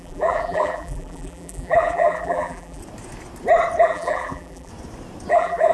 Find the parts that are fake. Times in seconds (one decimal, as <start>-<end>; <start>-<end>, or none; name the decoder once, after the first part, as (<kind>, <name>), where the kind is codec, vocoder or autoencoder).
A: 0.0-2.8 (vocoder, BigVGAN v2); 3.8-4.7; 5.3-5.7